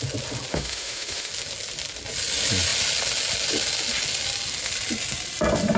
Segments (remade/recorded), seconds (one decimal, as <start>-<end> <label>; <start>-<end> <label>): 0.0-0.5 recorded; 0.5-1.3 remade; 1.3-5.8 recorded